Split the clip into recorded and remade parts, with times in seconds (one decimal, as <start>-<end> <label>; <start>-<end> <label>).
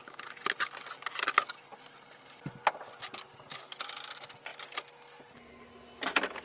0.0-6.4 recorded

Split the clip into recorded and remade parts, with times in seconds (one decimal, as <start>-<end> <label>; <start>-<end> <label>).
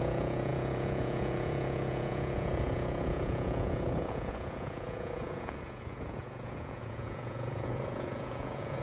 0.0-8.8 remade